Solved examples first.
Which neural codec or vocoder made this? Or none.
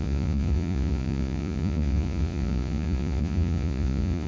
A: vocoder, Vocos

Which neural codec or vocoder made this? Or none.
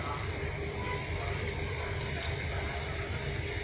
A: none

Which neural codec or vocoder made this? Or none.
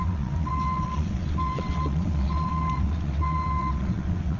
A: vocoder, WaveNeXt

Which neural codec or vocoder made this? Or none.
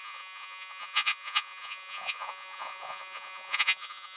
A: vocoder, Vocos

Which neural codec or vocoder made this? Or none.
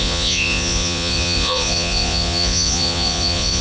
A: vocoder, Vocos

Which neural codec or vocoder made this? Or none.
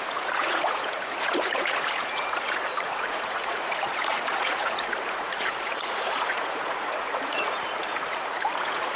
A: vocoder, Vocos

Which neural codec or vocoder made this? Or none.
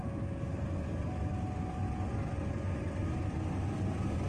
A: none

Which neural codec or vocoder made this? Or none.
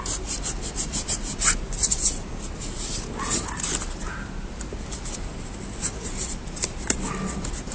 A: none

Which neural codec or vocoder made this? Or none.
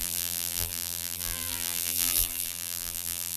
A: vocoder, BigVGAN v2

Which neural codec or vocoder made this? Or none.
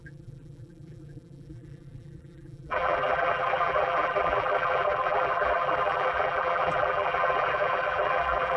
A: vocoder, BigVGAN v2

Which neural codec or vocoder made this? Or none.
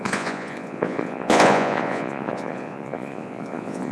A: vocoder, Vocos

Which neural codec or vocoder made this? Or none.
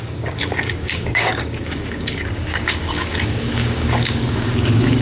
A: codec, DAC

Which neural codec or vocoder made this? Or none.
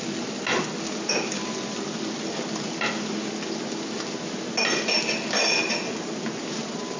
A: none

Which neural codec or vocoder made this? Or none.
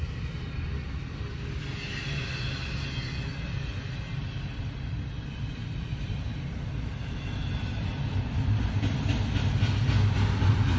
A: none